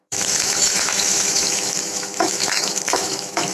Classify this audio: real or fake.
fake